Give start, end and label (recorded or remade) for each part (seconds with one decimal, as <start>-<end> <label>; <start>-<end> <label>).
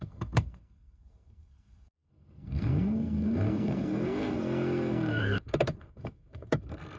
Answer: 0.0-7.0 remade